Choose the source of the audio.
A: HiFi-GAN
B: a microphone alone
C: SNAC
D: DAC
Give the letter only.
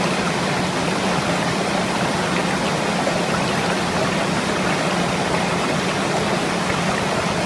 B